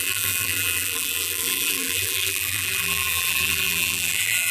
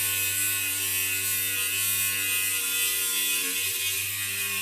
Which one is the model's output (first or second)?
first